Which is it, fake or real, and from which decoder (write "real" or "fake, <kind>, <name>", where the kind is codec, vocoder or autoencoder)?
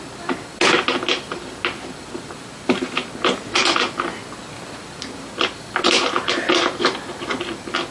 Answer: real